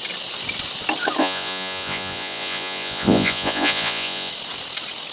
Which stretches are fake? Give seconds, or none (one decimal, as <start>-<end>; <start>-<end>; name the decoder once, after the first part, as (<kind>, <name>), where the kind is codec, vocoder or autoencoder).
1.2-4.3 (vocoder, Vocos)